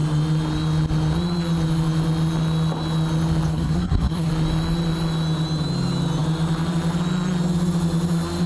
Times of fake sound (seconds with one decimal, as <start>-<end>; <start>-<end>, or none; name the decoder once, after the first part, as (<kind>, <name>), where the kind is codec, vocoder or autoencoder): 3.5-4.3 (codec, SNAC)

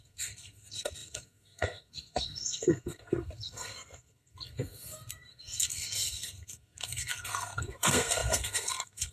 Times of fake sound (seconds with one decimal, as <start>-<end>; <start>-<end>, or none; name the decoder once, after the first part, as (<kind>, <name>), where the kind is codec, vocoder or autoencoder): 0.0-9.1 (codec, SNAC)

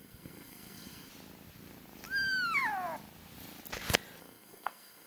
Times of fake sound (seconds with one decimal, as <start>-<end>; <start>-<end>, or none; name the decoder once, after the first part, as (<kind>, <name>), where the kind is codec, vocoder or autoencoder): 0.0-1.1 (codec, SNAC); 4.2-5.1

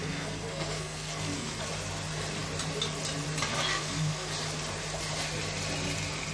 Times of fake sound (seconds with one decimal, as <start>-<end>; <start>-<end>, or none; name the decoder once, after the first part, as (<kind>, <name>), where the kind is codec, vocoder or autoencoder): 0.0-1.7 (codec, SNAC); 3.7-4.3